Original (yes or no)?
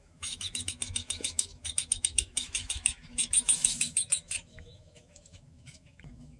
no